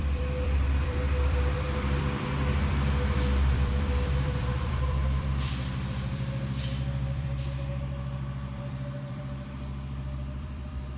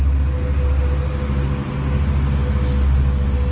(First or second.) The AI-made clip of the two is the first